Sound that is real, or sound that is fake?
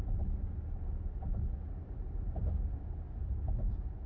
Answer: real